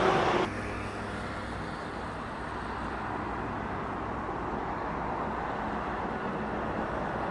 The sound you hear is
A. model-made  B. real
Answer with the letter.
B